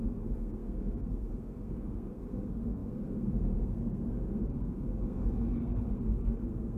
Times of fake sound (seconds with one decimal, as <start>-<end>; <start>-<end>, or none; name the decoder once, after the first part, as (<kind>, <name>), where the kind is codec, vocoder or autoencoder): 0.0-6.8 (codec, SNAC)